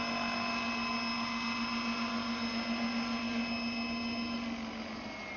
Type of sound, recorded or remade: recorded